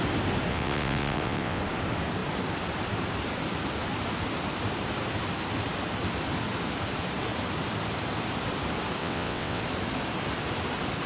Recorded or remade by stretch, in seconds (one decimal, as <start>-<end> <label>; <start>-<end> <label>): 0.0-0.5 recorded; 0.5-1.6 remade; 1.6-9.0 recorded; 9.0-9.6 remade; 9.6-11.1 recorded